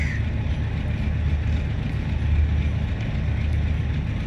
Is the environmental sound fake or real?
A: real